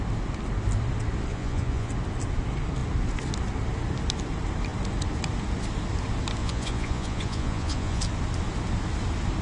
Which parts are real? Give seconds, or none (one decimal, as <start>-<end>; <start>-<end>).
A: 0.0-1.3; 1.9-6.4; 8.0-9.4